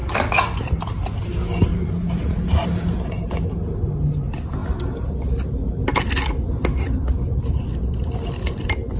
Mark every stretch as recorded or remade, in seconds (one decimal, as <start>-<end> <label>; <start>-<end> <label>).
0.0-1.7 recorded; 1.7-3.0 remade; 3.0-9.0 recorded